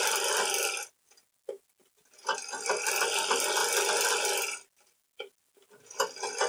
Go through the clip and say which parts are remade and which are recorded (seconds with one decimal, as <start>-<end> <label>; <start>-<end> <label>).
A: 0.0-6.5 recorded